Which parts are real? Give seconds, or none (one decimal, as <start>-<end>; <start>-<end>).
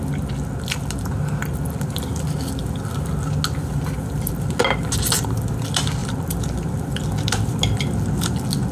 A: 0.0-3.6; 4.3-6.0; 7.6-8.7